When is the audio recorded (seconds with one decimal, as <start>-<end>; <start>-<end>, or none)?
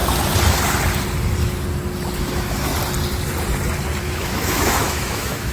0.0-2.2; 2.7-4.0